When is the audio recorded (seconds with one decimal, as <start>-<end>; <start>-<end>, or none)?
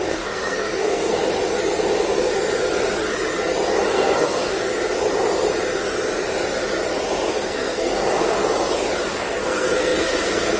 1.2-3.9; 4.8-7.3; 8.4-9.1